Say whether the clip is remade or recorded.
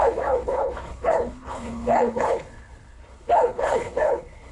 remade